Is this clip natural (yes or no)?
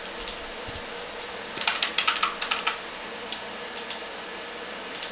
yes